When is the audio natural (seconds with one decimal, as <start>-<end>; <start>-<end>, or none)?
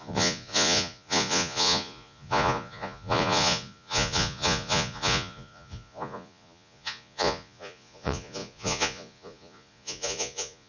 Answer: none